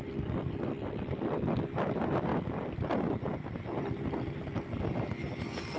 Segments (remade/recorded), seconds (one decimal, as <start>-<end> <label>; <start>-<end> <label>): 0.0-1.1 recorded; 1.1-5.8 remade